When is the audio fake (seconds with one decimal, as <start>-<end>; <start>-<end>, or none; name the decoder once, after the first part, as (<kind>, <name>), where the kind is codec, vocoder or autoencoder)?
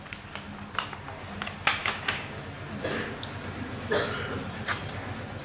1.8-2.4 (codec, DAC)